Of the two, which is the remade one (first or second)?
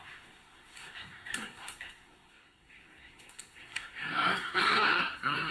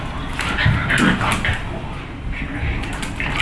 first